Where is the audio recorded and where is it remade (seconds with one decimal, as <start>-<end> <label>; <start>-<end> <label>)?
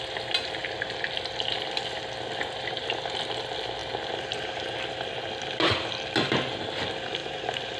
0.0-7.8 recorded